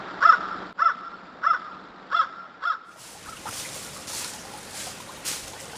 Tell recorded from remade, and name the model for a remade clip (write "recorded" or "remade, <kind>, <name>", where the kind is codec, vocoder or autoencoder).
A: recorded